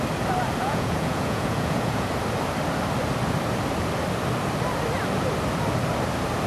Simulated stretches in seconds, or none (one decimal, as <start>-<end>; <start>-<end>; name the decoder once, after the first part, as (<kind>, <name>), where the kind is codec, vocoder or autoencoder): 0.6-2.1 (vocoder, Vocos)